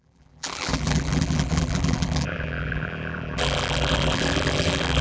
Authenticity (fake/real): fake